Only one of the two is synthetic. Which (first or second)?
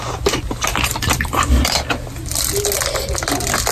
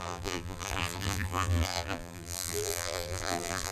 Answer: second